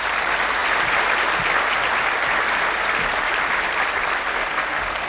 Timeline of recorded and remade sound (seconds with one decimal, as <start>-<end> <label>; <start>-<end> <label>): 0.0-4.3 recorded; 4.3-5.1 remade